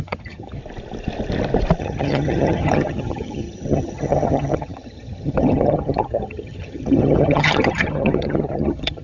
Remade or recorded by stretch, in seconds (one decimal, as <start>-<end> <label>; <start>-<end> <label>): 0.0-0.6 remade; 0.6-1.8 recorded; 1.8-9.0 remade